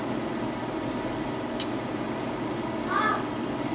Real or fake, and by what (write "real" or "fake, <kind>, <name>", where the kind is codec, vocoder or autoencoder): real